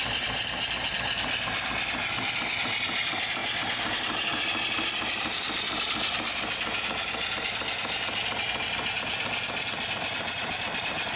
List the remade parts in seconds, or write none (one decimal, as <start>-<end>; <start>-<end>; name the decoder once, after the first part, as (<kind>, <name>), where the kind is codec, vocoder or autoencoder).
none

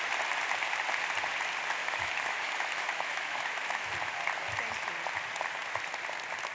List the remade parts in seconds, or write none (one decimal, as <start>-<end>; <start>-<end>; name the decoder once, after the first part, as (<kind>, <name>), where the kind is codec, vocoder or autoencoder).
1.8-3.9 (autoencoder, DAC-VAE)